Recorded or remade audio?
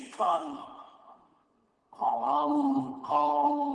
remade